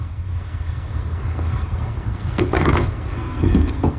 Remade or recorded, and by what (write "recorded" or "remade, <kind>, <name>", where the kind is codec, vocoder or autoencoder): remade, codec, SNAC